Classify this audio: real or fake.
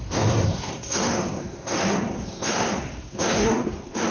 fake